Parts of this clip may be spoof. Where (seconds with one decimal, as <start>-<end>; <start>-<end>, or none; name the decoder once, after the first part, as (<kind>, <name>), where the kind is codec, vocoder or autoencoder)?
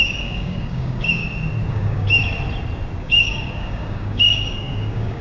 0.0-1.2 (codec, DAC); 1.7-2.2; 3.0-5.2